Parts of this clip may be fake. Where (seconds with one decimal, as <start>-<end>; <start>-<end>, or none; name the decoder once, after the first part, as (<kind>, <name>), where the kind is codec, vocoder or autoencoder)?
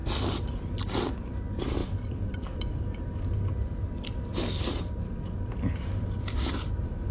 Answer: 1.2-7.1 (vocoder, BigVGAN v2)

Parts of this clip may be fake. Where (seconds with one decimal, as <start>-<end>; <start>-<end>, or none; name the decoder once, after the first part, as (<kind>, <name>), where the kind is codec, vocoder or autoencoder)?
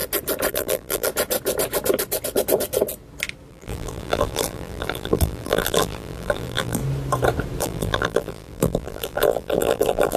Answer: 0.5-1.1 (vocoder, BigVGAN v2); 3.5-6.8; 7.6-10.2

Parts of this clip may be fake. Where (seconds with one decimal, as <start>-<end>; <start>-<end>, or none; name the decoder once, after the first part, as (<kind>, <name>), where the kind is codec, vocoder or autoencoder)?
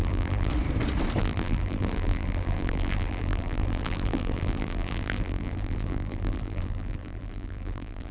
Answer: 0.0-0.5 (vocoder, BigVGAN v2); 1.2-8.1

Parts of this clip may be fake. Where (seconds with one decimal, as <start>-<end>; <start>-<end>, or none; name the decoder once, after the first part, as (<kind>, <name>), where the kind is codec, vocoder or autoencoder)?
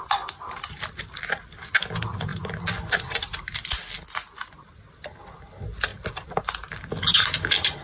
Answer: 5.9-6.5 (vocoder, BigVGAN v2)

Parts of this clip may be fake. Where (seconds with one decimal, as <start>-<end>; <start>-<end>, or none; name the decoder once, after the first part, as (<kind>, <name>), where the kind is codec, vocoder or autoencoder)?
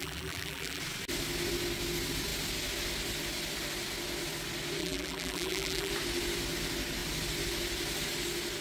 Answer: 0.0-0.8 (vocoder, BigVGAN v2); 4.8-5.9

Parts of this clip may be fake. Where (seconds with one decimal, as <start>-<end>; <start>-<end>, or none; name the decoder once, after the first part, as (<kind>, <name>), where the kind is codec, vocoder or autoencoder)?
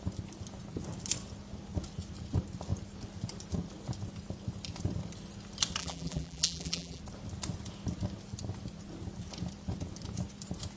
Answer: 5.8-7.0 (vocoder, BigVGAN v2)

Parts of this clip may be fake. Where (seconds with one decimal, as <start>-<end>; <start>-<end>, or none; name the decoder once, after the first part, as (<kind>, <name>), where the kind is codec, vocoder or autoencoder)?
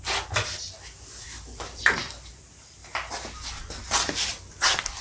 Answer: 0.0-2.8 (vocoder, BigVGAN v2); 4.1-5.0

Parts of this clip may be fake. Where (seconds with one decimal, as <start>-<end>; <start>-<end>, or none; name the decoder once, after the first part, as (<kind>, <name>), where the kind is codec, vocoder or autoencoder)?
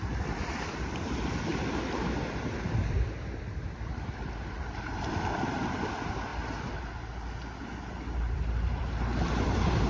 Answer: 0.0-6.3 (vocoder, BigVGAN v2); 7.6-9.9